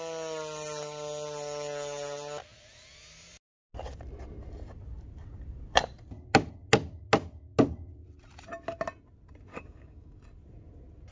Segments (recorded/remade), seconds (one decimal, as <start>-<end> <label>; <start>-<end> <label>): 0.0-9.5 recorded; 9.5-10.2 remade; 10.2-11.1 recorded